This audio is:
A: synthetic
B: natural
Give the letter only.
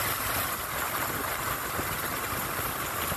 B